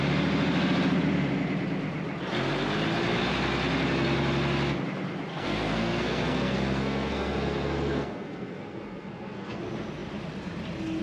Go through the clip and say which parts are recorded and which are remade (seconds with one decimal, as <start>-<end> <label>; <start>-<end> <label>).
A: 0.0-5.3 recorded; 5.3-9.6 remade; 9.6-11.0 recorded